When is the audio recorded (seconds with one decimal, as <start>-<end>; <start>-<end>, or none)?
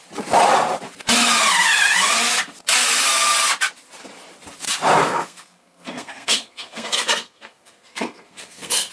0.0-5.0